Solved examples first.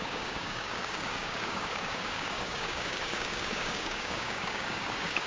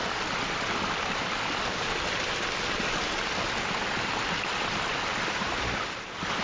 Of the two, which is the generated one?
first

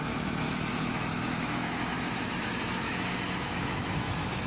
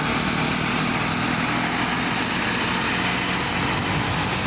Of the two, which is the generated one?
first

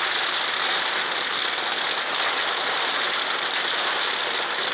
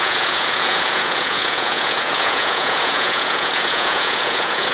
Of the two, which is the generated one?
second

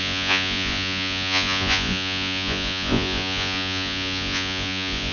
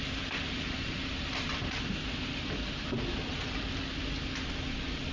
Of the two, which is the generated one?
first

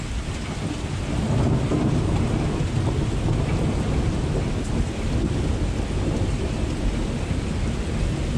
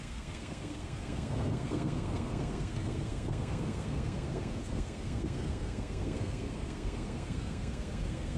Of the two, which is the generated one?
second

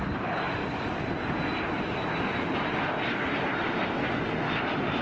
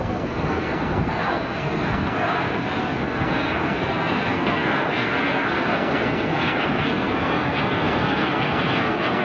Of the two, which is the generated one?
second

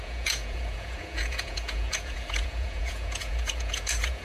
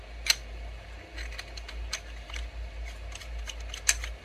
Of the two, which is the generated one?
first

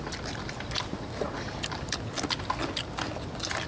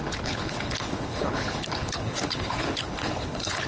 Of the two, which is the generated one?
second